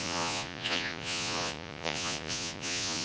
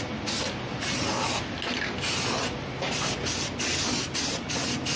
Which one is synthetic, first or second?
first